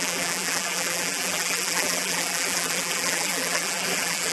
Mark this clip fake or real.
fake